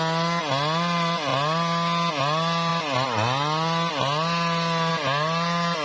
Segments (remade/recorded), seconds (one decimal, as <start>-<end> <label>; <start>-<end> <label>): 0.0-5.8 recorded